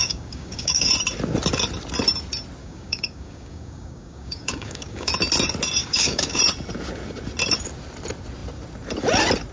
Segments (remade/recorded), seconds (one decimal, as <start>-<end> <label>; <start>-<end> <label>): 0.0-0.9 remade; 0.9-2.6 recorded; 2.6-5.1 remade; 5.1-5.8 recorded; 5.8-6.4 remade; 6.4-9.5 recorded